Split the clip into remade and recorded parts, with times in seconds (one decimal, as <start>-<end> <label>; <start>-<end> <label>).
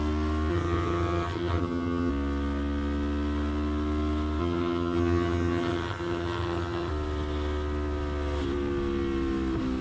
0.0-0.5 recorded; 0.5-2.1 remade; 2.1-4.4 recorded; 4.4-6.9 remade; 6.9-9.8 recorded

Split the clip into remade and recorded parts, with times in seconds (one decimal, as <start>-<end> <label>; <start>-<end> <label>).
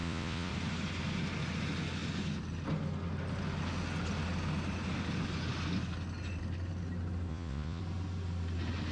0.0-0.5 remade; 0.5-7.3 recorded; 7.3-7.8 remade; 7.8-8.9 recorded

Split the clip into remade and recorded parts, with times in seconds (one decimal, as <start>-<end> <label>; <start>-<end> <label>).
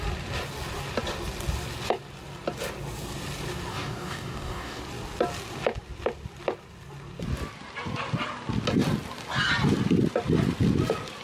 0.0-3.7 recorded; 3.7-4.8 remade; 4.8-11.2 recorded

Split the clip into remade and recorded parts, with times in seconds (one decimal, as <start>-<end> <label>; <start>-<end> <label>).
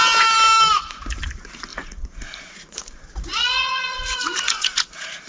0.0-1.7 recorded; 1.7-5.3 remade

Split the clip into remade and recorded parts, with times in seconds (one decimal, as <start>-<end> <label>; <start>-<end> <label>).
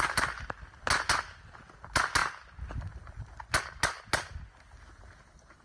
0.0-5.6 recorded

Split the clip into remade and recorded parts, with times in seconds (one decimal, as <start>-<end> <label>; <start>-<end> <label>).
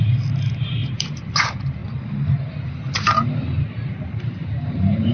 0.0-1.8 remade; 1.8-3.9 recorded; 3.9-5.1 remade